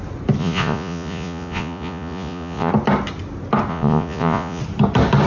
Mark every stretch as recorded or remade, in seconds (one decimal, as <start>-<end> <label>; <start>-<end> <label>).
0.0-0.4 recorded; 0.4-2.7 remade; 2.7-3.7 recorded; 3.7-4.6 remade; 4.6-5.3 recorded